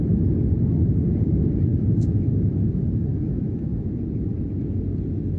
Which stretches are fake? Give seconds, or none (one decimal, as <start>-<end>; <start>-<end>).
1.7-2.5; 3.1-3.7